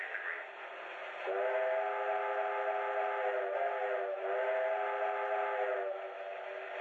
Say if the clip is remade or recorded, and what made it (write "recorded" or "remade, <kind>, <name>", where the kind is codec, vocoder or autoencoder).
recorded